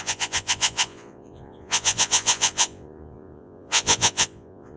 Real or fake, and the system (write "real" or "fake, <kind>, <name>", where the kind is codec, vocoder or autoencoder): fake, vocoder, Vocos